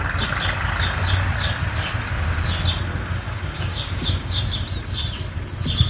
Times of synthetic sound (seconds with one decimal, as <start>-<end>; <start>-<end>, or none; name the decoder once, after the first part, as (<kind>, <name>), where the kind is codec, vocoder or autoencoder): 2.9-4.4 (codec, DAC)